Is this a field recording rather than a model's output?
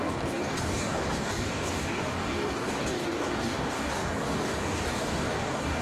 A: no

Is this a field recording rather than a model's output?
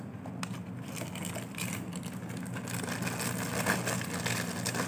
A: yes